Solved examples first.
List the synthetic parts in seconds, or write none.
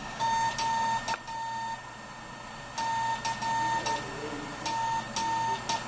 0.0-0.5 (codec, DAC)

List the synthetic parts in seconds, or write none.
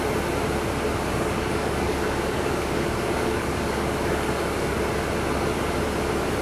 1.1-4.9 (codec, DAC)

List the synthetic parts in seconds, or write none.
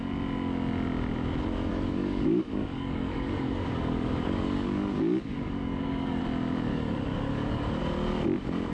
1.7-6.2 (codec, DAC); 6.7-7.8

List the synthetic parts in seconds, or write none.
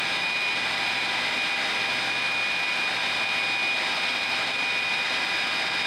none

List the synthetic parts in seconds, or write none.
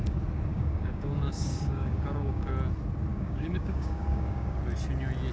0.5-2.5 (codec, DAC); 3.1-4.6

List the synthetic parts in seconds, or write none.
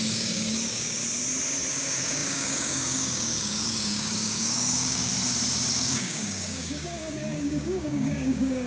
0.0-1.0 (codec, DAC); 1.7-5.1; 5.7-8.7